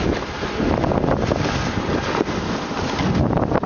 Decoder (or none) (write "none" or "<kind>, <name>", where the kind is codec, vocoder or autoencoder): none